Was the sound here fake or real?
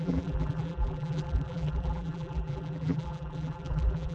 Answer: fake